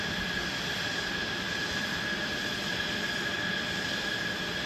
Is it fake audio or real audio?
real